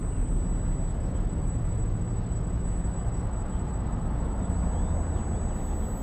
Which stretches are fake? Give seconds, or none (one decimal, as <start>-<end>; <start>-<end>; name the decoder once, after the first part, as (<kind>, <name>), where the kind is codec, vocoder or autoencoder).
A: 0.9-4.5 (autoencoder, DAC-VAE)